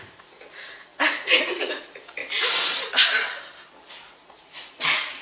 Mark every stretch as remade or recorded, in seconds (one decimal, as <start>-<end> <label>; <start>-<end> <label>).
0.0-2.2 remade; 2.2-3.9 recorded; 3.9-5.2 remade